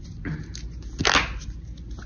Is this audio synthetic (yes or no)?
no